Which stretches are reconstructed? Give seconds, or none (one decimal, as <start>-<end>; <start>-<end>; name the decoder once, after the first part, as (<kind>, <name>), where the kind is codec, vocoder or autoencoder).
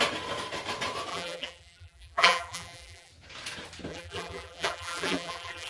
1.1-3.1 (vocoder, BigVGAN v2); 3.9-5.7